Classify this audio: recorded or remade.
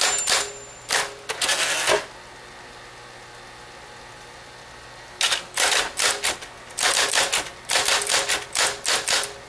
recorded